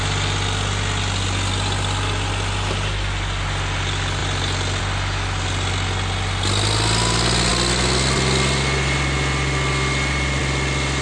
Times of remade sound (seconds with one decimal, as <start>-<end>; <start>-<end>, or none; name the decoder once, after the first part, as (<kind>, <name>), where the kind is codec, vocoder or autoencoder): none